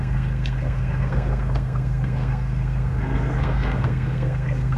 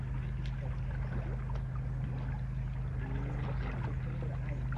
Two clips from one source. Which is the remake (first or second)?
first